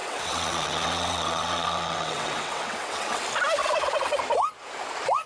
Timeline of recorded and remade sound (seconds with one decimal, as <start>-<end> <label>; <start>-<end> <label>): 0.0-3.2 remade; 3.2-3.6 recorded; 3.6-4.2 remade; 4.2-5.3 recorded